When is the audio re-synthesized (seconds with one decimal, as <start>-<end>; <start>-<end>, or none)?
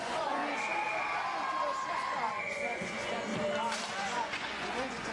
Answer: 0.0-0.4; 1.9-3.3; 3.9-5.1